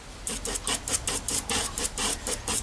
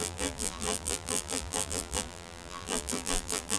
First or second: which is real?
first